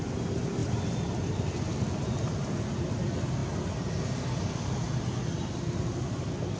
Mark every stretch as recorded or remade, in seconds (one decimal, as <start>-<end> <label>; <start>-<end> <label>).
0.0-6.6 recorded